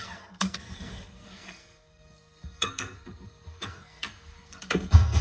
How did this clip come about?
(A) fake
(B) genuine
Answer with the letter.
A